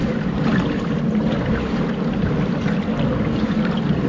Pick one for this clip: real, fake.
real